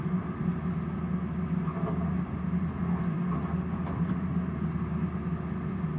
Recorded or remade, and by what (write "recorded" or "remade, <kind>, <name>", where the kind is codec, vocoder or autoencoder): recorded